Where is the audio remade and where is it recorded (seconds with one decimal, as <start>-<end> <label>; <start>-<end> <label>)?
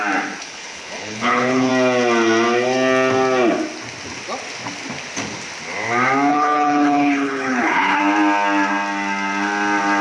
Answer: 0.0-0.4 recorded; 0.4-1.7 remade; 1.7-6.3 recorded; 6.3-8.0 remade; 8.0-10.0 recorded